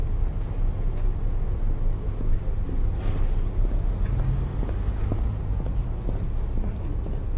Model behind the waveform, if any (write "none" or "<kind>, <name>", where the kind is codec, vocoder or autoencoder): none